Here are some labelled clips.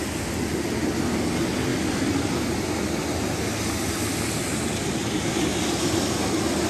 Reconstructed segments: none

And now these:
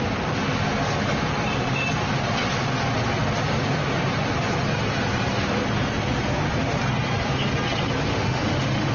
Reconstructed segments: 8.1-8.9

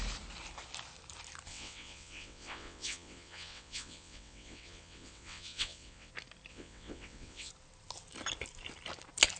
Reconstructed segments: 1.5-6.1; 6.5-7.5